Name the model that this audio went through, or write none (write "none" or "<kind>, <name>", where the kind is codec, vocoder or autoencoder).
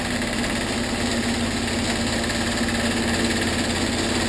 none